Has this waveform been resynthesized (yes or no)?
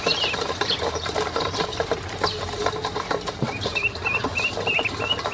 no